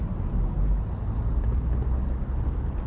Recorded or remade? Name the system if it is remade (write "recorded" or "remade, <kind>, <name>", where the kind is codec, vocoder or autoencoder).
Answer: recorded